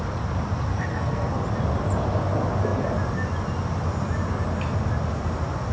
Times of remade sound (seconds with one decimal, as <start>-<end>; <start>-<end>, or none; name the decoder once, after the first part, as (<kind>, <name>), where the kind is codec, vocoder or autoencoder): 0.7-1.3 (codec, SNAC)